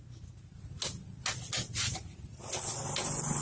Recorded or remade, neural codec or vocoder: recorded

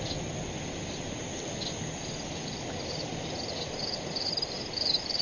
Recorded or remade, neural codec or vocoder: recorded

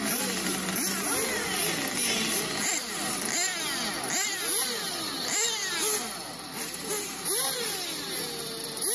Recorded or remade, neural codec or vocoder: recorded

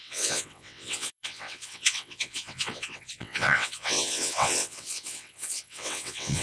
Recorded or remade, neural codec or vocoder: remade, vocoder, WaveNeXt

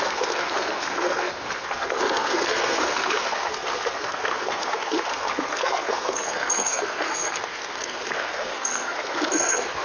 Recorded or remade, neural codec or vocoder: remade, codec, SNAC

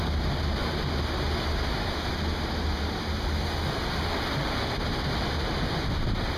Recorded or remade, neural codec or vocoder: recorded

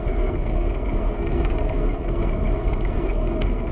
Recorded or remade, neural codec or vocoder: remade, codec, SNAC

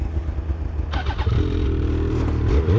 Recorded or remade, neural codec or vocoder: recorded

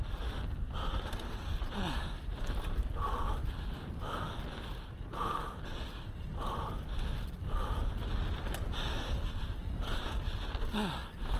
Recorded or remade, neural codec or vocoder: recorded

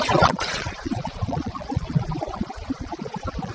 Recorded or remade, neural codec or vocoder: remade, vocoder, Vocos